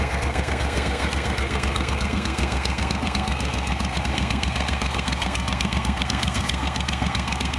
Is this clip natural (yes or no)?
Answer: no